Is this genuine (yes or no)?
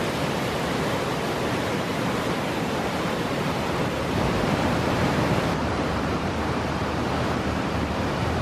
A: no